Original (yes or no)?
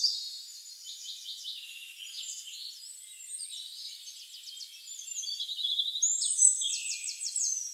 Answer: yes